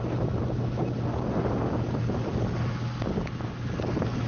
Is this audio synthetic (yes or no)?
no